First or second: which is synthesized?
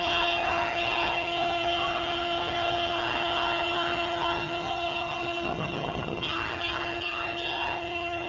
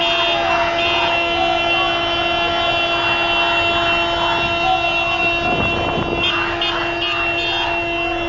first